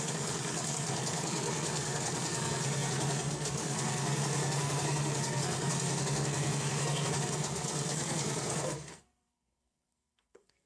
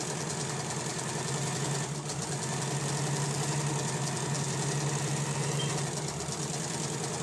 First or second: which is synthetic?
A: first